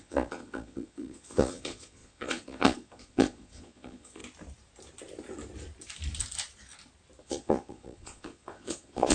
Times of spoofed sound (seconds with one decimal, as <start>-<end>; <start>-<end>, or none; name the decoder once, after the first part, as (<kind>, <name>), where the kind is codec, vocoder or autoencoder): 0.0-4.2 (vocoder, Vocos); 7.2-9.1